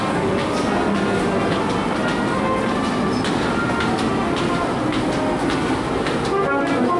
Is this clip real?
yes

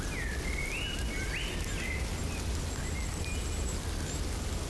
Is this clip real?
yes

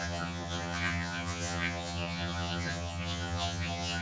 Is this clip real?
no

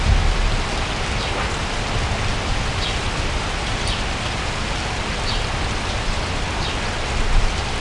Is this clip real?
yes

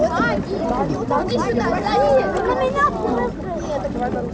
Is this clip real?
yes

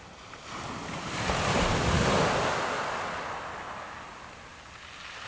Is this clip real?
yes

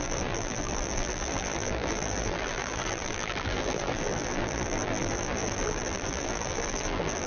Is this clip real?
no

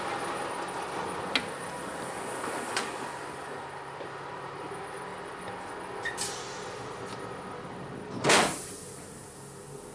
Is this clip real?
yes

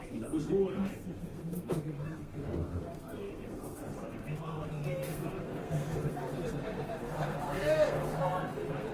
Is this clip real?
no